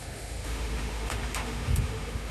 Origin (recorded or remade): remade